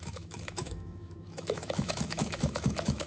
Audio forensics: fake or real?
fake